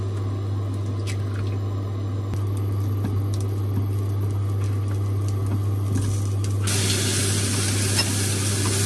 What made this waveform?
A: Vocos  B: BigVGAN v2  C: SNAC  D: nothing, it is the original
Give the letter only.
D